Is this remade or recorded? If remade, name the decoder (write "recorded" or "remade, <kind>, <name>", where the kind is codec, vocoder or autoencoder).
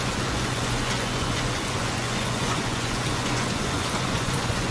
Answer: remade, vocoder, Vocos